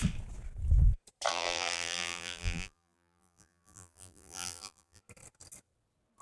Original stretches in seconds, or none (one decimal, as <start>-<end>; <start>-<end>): 0.0-1.3; 5.0-6.2